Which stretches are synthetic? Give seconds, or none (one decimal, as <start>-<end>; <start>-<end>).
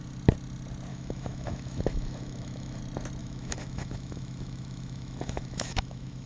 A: 0.9-2.8; 3.2-6.3